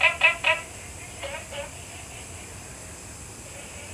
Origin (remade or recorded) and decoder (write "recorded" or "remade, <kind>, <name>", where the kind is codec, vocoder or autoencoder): recorded